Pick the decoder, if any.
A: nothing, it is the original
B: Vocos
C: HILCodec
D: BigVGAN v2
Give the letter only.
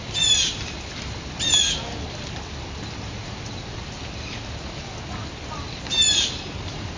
A